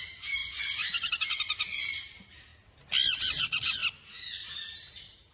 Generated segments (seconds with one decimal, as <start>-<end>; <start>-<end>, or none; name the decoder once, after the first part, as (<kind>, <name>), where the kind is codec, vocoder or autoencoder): 0.0-0.4 (vocoder, BigVGAN v2); 2.0-2.5; 3.1-3.8; 4.7-5.3